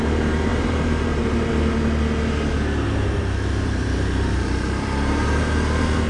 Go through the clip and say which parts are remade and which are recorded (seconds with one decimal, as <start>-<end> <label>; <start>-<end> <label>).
0.0-0.5 recorded; 0.5-1.5 remade; 1.5-3.2 recorded; 3.2-6.1 remade